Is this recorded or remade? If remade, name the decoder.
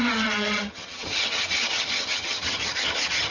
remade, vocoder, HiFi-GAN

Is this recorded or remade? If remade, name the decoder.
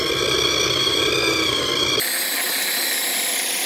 recorded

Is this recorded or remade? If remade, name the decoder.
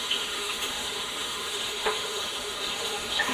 remade, autoencoder, DAC-VAE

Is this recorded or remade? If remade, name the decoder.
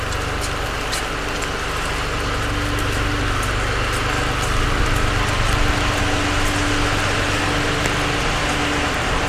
recorded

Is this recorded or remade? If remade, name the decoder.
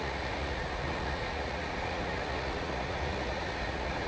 remade, vocoder, Vocos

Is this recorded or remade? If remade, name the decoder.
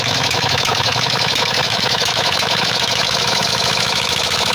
remade, autoencoder, DAC-VAE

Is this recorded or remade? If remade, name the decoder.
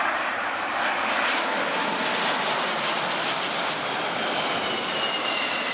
recorded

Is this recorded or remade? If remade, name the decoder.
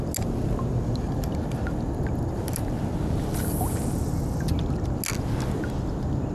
recorded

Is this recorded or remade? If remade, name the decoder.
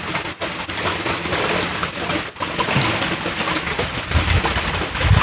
recorded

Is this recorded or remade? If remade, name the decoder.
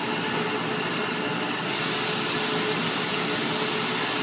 recorded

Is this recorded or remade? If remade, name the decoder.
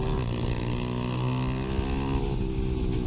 recorded